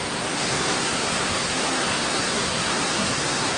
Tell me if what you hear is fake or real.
fake